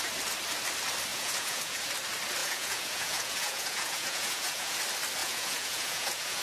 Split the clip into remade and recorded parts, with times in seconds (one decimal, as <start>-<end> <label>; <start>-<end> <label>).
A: 0.0-1.1 recorded; 1.1-1.8 remade; 1.8-2.4 recorded; 2.4-4.8 remade; 4.8-5.2 recorded; 5.2-6.4 remade